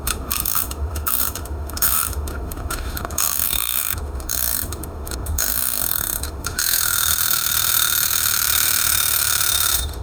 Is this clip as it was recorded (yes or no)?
no